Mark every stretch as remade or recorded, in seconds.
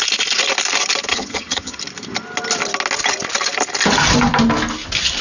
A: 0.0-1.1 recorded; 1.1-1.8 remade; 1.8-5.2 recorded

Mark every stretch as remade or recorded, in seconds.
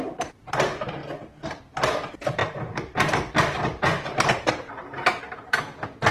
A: 0.0-2.4 recorded; 2.4-5.2 remade; 5.2-6.1 recorded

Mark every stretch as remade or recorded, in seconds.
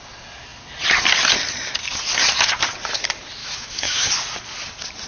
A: 0.0-3.4 recorded; 3.4-4.1 remade; 4.1-5.1 recorded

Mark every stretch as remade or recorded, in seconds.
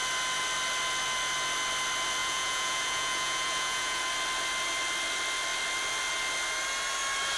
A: 0.0-2.2 recorded; 2.2-4.0 remade; 4.0-7.4 recorded